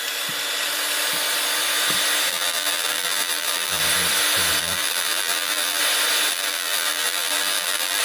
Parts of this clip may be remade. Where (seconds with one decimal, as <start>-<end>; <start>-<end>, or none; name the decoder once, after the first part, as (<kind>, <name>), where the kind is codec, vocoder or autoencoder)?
2.3-3.8 (vocoder, BigVGAN v2); 4.6-5.8; 6.3-8.0